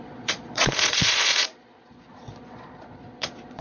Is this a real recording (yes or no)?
no